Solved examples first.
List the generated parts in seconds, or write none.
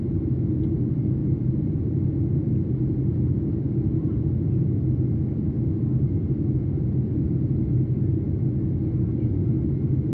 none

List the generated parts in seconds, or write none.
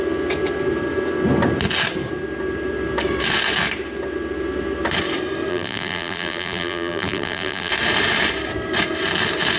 5.5-7.7 (vocoder, BigVGAN v2)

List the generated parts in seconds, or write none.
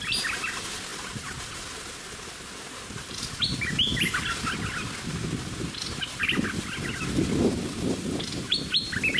0.0-0.9 (vocoder, BigVGAN v2); 3.0-3.9; 4.6-9.2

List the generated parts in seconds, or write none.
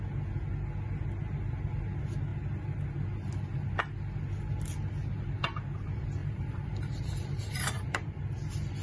6.2-8.1 (vocoder, BigVGAN v2)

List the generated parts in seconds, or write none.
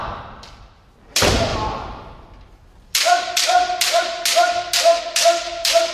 none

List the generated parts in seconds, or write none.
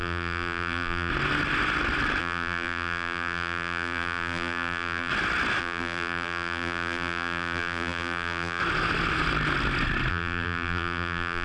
0.0-1.1 (vocoder, BigVGAN v2); 2.2-5.1; 5.6-8.6; 10.1-11.4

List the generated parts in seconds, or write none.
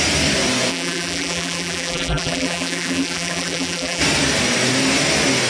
0.7-4.0 (vocoder, BigVGAN v2)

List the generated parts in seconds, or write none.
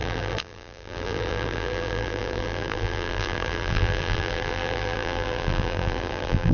0.0-6.5 (vocoder, BigVGAN v2)